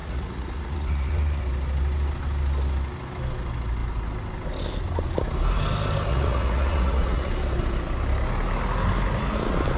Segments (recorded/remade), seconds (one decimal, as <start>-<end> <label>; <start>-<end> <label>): 0.0-1.4 remade; 1.4-6.1 recorded; 6.1-7.3 remade; 7.3-9.8 recorded